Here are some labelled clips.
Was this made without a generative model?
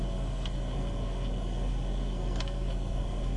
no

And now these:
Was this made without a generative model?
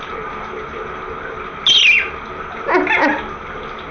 yes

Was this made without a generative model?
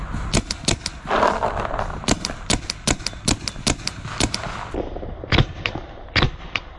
yes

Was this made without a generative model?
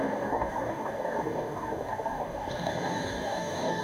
no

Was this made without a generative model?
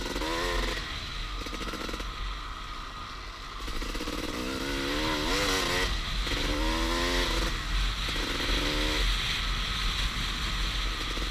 yes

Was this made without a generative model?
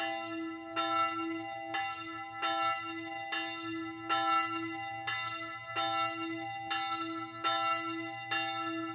yes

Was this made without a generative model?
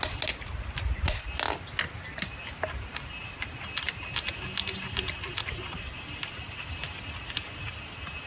yes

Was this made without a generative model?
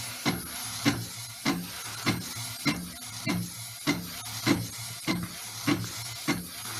yes